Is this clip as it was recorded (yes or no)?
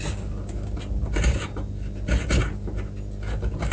yes